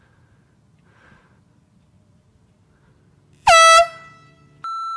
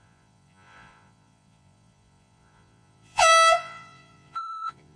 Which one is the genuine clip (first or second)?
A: first